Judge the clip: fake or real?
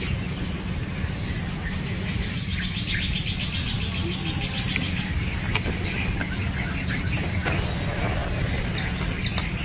real